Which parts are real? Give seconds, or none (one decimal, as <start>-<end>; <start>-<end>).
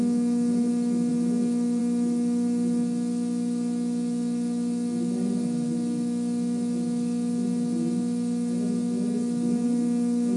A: 0.0-10.4